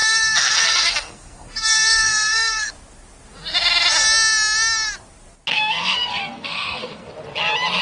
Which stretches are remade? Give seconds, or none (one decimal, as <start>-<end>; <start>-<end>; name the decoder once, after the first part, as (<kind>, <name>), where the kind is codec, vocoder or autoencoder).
0.0-2.7 (codec, SNAC); 5.5-7.1